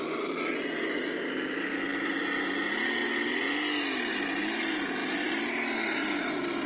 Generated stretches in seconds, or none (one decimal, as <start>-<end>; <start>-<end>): none